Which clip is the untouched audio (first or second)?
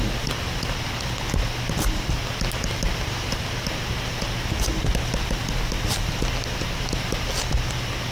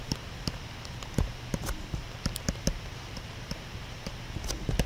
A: first